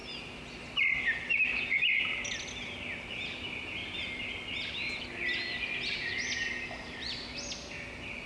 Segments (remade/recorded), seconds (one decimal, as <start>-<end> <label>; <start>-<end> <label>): 0.0-8.3 recorded